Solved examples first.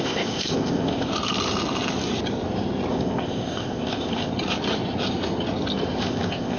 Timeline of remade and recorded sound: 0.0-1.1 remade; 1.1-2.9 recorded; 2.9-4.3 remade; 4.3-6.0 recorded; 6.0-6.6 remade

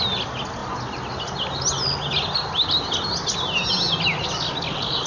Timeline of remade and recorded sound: 0.0-5.1 recorded

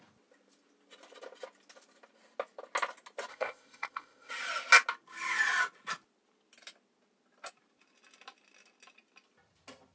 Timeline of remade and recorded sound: 0.0-3.3 recorded; 3.3-4.3 remade; 4.3-9.9 recorded

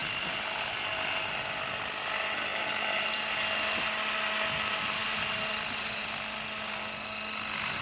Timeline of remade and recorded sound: 0.0-7.8 recorded